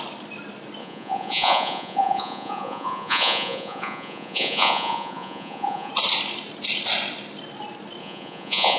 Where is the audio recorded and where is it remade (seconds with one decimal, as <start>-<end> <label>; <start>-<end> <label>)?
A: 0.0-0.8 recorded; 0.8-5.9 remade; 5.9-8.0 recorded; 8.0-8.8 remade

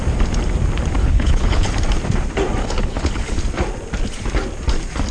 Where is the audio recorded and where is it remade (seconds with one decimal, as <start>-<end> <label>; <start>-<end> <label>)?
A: 0.0-1.0 recorded; 1.0-1.7 remade; 1.7-2.6 recorded; 2.6-3.4 remade; 3.4-5.1 recorded

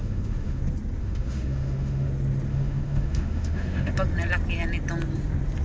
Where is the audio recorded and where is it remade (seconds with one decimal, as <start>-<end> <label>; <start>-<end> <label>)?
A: 0.0-0.6 remade; 0.6-1.0 recorded; 1.0-2.1 remade; 2.1-2.5 recorded; 2.5-3.9 remade; 3.9-5.6 recorded

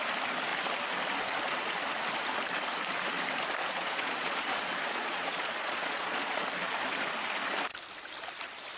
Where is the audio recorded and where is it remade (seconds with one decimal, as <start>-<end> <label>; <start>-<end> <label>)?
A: 0.0-3.6 recorded; 3.6-6.4 remade; 6.4-8.8 recorded

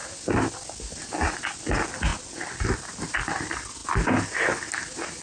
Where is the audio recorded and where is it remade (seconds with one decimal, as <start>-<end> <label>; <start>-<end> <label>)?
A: 0.0-5.2 recorded

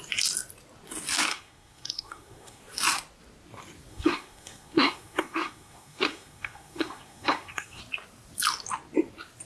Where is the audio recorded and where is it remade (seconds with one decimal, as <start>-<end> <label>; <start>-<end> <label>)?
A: 0.0-1.3 recorded; 1.3-2.6 remade; 2.6-3.9 recorded; 3.9-7.8 remade; 7.8-9.4 recorded

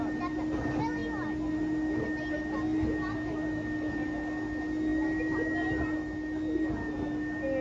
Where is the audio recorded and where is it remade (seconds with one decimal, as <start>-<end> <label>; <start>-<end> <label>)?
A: 0.0-7.6 recorded

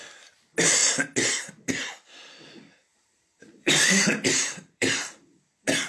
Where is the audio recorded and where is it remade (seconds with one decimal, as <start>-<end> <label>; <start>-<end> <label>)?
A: 0.0-2.9 recorded; 2.9-5.5 remade; 5.5-5.9 recorded